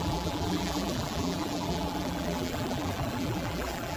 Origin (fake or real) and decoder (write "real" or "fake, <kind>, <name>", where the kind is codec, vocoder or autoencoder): fake, vocoder, BigVGAN v2